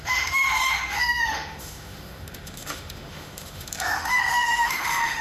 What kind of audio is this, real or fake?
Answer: fake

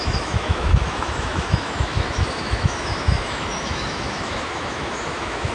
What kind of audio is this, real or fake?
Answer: fake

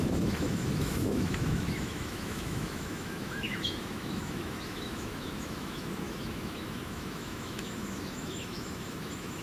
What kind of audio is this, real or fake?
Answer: fake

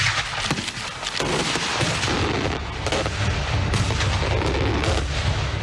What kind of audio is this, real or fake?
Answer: real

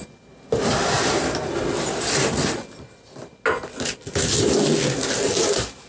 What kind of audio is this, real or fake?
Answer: real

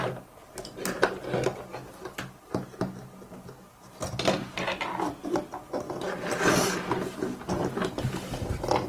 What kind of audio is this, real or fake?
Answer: real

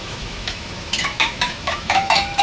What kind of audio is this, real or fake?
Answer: fake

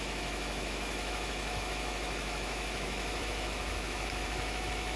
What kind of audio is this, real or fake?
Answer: fake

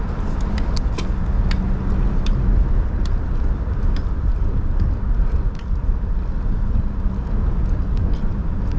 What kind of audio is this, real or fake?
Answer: real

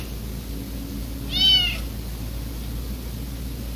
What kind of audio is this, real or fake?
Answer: real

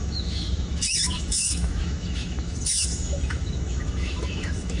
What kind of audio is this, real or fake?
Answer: fake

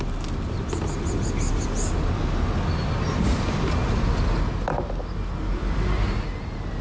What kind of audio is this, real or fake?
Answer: real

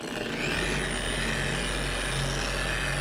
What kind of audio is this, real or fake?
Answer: real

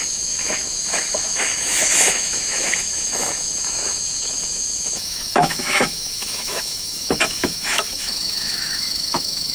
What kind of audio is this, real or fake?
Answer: fake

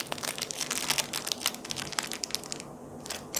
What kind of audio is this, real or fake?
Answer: real